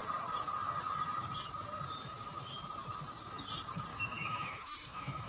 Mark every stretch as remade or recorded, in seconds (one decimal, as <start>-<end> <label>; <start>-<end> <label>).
0.0-3.9 recorded; 3.9-5.3 remade